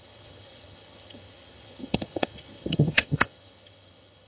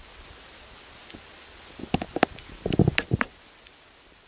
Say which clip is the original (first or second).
second